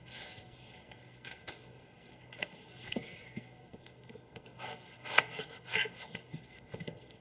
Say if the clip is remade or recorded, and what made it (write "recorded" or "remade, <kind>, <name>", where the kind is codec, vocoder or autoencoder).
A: remade, codec, SNAC